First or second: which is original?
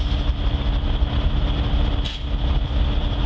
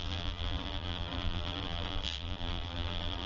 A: first